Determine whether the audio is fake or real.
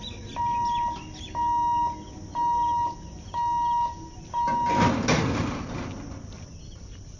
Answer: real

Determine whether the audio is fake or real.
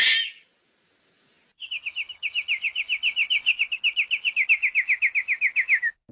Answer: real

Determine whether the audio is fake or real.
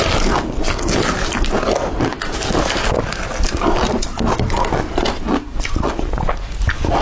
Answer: real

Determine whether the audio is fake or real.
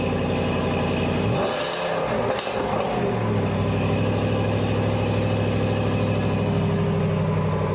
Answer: real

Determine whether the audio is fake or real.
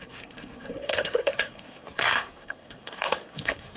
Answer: fake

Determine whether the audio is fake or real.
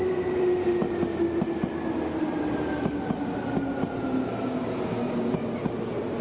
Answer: real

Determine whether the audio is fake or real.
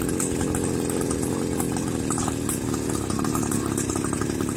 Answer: real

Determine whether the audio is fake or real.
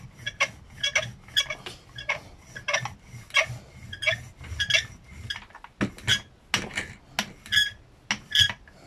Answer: real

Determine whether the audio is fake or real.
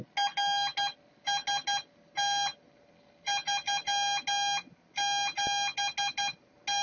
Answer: real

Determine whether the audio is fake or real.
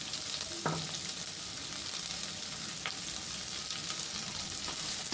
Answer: real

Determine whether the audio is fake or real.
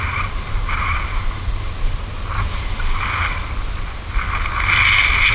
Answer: real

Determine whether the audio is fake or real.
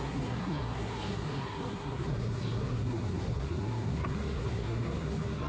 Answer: fake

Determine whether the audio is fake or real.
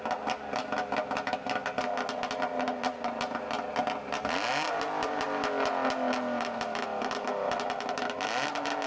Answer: real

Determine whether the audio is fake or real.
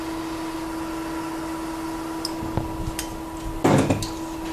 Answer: real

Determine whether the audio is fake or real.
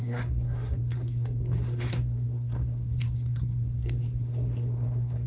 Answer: fake